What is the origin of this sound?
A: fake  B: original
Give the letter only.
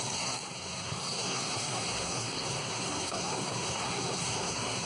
A